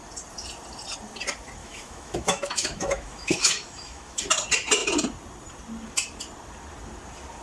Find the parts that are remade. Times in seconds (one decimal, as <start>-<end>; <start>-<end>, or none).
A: 1.6-4.2